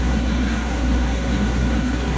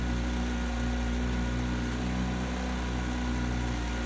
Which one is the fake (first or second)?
first